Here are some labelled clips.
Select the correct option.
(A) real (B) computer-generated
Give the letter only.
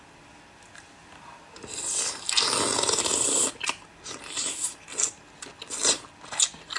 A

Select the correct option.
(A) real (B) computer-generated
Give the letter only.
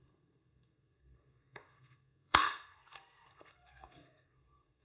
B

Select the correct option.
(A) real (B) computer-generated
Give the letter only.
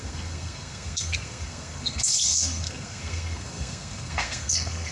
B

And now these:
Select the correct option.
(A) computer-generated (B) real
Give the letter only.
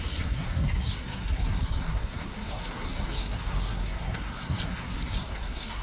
A